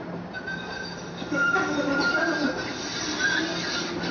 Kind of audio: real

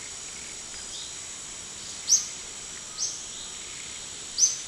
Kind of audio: real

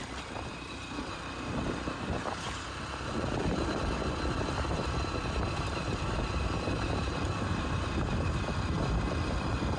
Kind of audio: fake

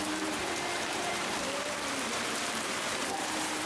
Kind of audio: fake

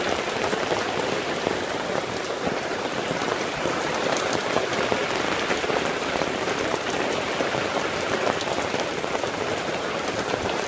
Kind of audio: real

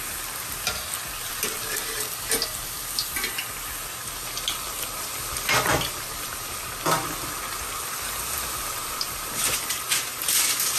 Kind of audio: real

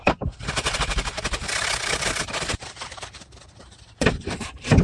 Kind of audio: fake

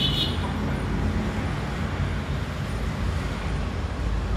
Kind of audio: real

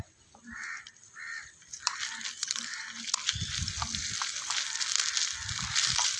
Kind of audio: real